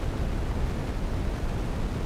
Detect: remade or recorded recorded